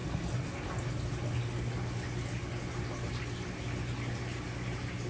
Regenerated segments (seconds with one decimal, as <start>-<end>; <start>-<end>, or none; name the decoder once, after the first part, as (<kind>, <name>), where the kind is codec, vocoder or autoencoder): none